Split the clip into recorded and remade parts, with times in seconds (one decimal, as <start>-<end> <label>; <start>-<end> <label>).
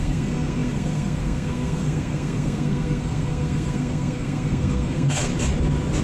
0.0-5.3 remade; 5.3-6.0 recorded